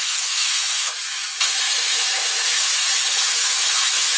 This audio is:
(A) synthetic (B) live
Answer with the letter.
A